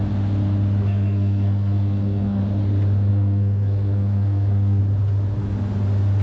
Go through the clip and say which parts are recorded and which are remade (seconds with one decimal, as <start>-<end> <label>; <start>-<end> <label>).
0.0-0.8 recorded; 0.8-2.4 remade; 2.4-3.1 recorded; 3.1-4.8 remade; 4.8-6.2 recorded